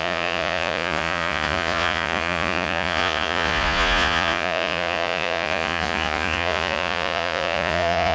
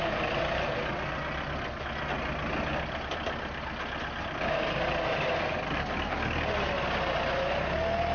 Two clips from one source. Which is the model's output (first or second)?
first